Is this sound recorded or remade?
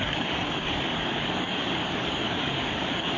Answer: remade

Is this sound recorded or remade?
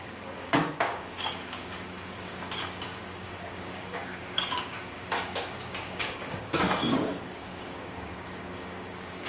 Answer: remade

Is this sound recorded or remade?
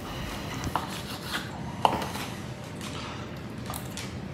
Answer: recorded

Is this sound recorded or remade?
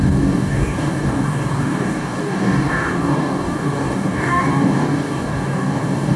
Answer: remade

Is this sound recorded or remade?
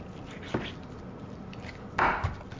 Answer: recorded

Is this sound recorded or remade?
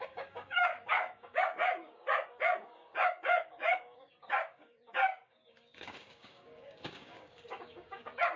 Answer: remade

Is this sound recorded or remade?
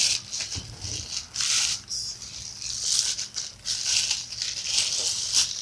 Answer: recorded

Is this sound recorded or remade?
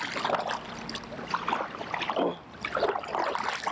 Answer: recorded